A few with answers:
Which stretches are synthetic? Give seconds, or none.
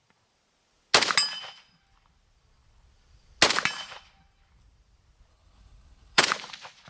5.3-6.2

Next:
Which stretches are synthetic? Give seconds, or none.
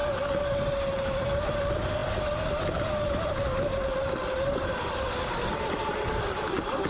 none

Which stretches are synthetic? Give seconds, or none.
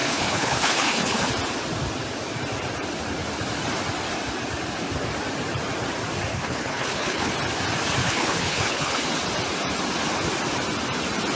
0.0-1.3; 6.3-7.3; 8.0-9.0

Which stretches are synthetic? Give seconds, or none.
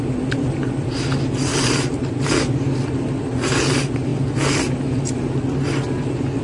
none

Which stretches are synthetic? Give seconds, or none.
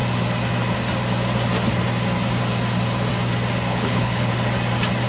3.7-4.3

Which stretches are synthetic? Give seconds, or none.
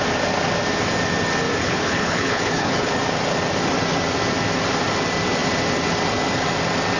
1.6-2.9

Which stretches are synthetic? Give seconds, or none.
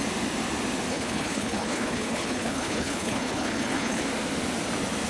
0.9-4.0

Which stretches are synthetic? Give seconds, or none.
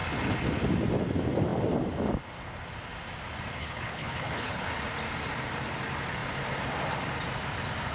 3.6-4.7